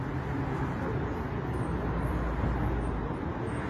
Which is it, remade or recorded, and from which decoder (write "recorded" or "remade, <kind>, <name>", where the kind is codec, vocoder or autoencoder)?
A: recorded